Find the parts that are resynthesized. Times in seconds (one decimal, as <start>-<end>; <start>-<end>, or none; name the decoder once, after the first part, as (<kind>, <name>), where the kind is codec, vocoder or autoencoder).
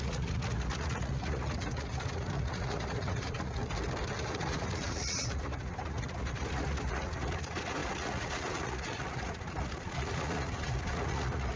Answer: 0.0-3.6 (vocoder, Vocos); 4.2-11.6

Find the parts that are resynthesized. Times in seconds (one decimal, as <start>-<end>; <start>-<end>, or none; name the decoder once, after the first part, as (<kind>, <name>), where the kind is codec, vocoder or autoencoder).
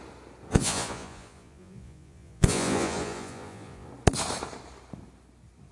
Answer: 0.5-3.9 (vocoder, Vocos)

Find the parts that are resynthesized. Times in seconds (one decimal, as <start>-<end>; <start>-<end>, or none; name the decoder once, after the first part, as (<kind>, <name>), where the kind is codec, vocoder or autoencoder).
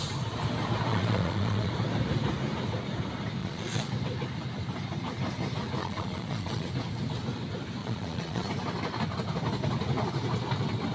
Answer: 0.9-1.7 (vocoder, Vocos); 3.4-3.9; 5.8-6.7; 7.8-8.5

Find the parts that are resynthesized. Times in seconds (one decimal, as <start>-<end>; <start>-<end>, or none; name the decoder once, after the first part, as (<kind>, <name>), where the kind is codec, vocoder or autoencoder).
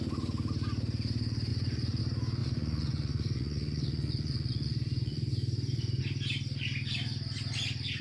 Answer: 1.5-2.0 (vocoder, Vocos); 2.4-6.0